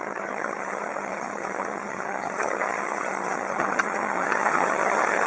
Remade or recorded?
remade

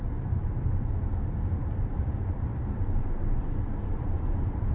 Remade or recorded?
remade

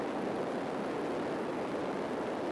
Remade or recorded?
recorded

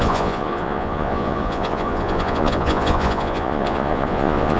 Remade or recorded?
remade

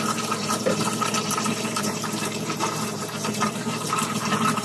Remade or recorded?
remade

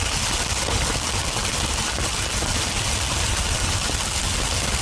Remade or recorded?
recorded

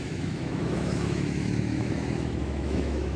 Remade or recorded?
remade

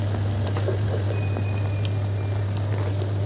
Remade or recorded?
recorded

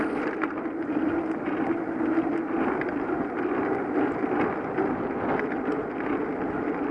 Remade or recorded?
recorded